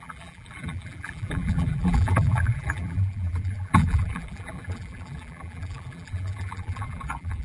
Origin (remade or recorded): remade